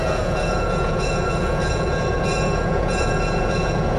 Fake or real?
fake